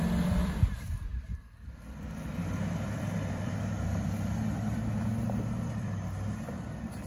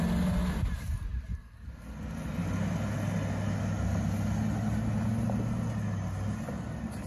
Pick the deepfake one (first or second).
first